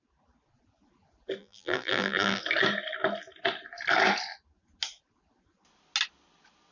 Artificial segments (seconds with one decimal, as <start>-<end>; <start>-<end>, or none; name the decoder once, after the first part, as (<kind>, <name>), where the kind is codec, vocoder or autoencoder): 1.4-2.4 (vocoder, BigVGAN v2)